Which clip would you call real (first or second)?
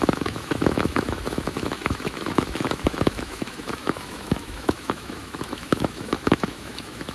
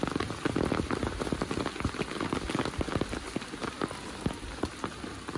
second